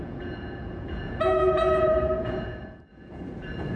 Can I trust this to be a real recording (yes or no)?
no